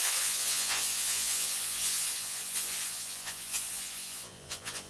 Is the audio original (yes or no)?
no